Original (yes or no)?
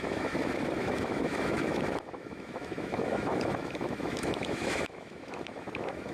no